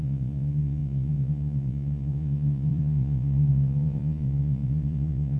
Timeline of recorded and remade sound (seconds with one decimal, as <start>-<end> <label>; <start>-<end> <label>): 0.0-5.4 remade